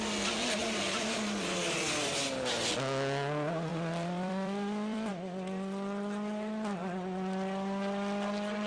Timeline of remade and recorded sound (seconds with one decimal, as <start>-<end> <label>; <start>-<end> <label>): 0.0-0.6 recorded; 0.6-2.2 remade; 2.2-3.7 recorded; 3.7-5.1 remade; 5.1-8.7 recorded